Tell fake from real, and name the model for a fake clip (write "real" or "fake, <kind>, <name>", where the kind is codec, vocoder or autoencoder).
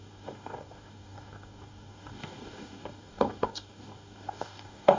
fake, codec, DAC